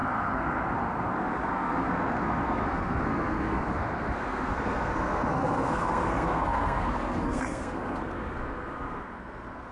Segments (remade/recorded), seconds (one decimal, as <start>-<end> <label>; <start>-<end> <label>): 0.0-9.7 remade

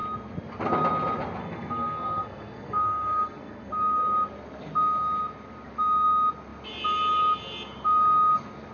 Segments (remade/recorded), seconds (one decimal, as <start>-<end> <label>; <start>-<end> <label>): 0.0-1.4 recorded; 1.4-3.7 remade; 3.7-8.7 recorded

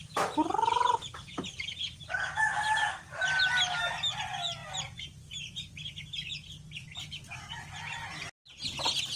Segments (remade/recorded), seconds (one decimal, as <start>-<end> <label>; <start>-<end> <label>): 0.0-9.2 recorded

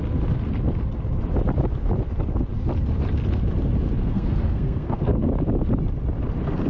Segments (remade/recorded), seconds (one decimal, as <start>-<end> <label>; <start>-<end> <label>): 0.0-4.0 recorded; 4.0-5.3 remade; 5.3-6.7 recorded

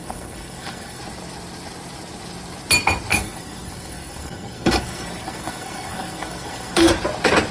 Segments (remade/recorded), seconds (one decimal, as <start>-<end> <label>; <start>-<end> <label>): 0.0-1.0 remade; 1.0-3.1 recorded; 3.1-6.9 remade; 6.9-7.5 recorded